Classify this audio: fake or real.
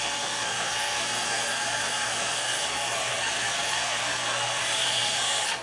fake